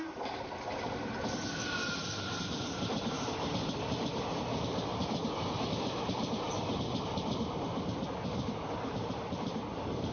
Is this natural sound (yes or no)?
yes